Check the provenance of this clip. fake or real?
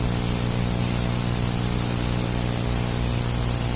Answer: real